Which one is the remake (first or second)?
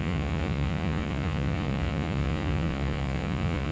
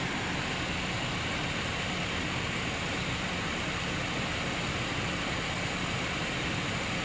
first